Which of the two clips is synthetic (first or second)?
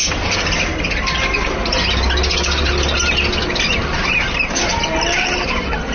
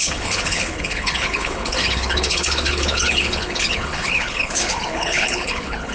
second